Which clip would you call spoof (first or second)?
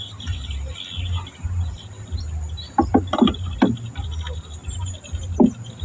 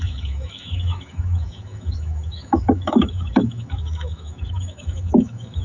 second